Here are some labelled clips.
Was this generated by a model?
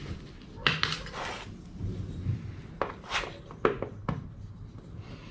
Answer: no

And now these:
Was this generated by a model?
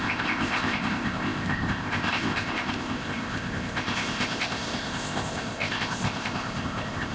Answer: yes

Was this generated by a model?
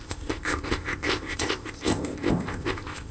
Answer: yes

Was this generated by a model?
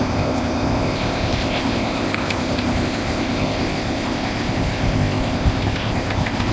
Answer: yes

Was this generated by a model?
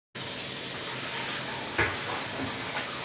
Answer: no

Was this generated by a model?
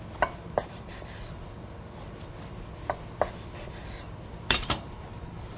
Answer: no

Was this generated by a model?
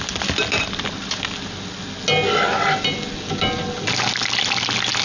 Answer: no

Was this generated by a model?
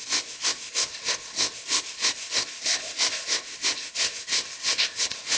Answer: yes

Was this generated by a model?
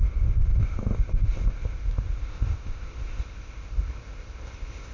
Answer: yes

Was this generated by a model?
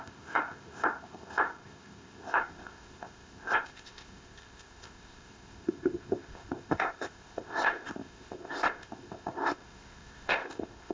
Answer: yes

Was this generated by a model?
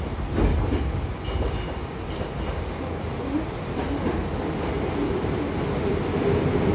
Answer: no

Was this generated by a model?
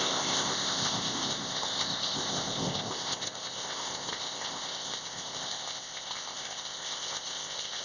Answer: yes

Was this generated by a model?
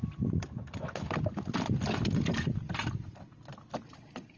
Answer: no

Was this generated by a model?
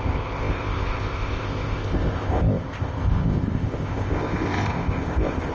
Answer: yes